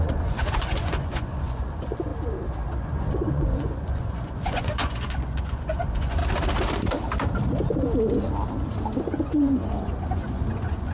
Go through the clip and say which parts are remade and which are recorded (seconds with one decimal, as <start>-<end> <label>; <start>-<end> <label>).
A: 0.0-2.1 remade; 2.1-3.1 recorded; 3.1-6.2 remade; 6.2-9.0 recorded; 9.0-10.9 remade